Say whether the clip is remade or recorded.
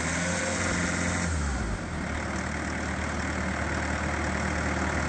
recorded